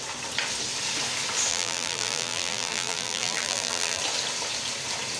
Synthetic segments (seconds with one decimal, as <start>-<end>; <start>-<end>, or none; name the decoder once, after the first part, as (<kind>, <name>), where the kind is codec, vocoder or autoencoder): 1.5-4.0 (vocoder, BigVGAN v2)